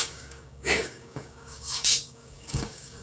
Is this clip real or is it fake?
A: fake